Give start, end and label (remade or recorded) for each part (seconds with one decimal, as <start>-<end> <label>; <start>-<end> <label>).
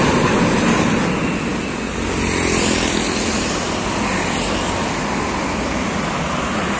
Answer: 0.0-6.8 recorded